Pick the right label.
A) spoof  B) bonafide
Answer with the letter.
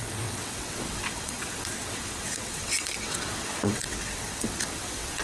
A